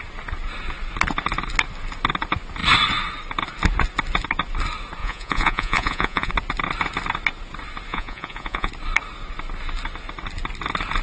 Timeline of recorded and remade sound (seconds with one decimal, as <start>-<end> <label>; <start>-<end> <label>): 0.0-5.0 recorded; 5.0-6.3 remade; 6.3-7.9 recorded; 7.9-8.7 remade; 8.7-11.0 recorded